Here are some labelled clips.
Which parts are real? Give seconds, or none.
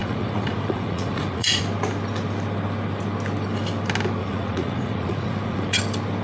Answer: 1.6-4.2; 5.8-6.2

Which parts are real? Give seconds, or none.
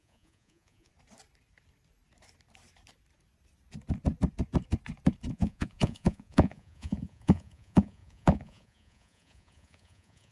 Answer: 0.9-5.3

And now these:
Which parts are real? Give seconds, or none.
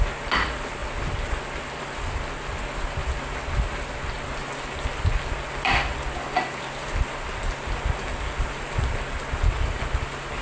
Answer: 0.0-10.4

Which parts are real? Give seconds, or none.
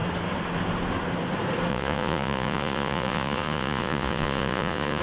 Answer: 0.0-1.7